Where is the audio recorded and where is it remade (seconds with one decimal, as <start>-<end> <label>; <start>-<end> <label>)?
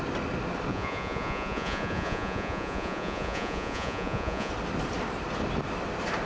0.0-0.7 recorded; 0.7-4.5 remade; 4.5-6.3 recorded